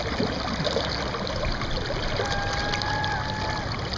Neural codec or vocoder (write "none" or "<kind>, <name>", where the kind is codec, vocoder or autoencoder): none